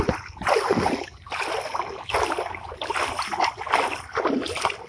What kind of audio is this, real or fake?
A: real